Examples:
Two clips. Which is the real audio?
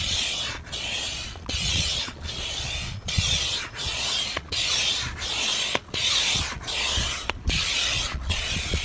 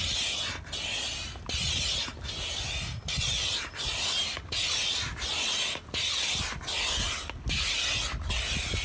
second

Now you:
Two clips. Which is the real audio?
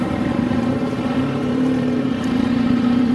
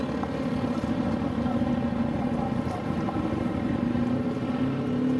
second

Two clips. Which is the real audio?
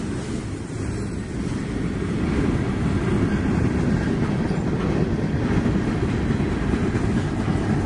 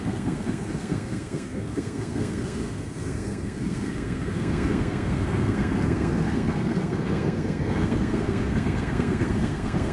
first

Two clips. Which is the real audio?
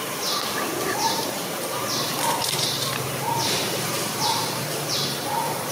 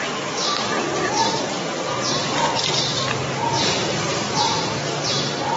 second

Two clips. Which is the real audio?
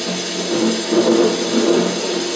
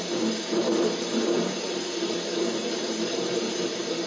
first